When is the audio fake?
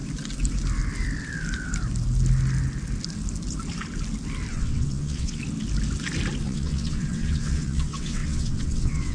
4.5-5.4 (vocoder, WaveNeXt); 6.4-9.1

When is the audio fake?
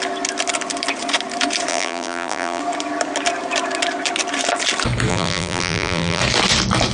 1.7-2.6 (vocoder, BigVGAN v2); 5.1-6.2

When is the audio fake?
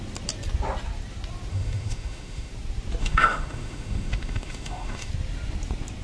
1.5-2.5 (autoencoder, DAC-VAE); 3.0-5.1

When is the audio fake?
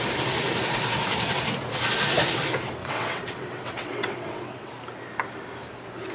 2.8-4.7 (vocoder, WaveNeXt)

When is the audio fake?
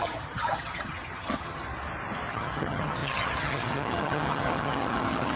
0.0-1.6 (vocoder, HiFi-GAN); 2.3-5.4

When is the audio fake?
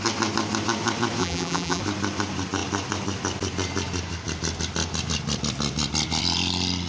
1.2-1.8 (vocoder, BigVGAN v2)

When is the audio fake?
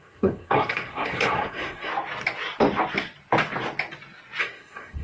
0.0-1.9 (codec, SNAC); 4.4-5.0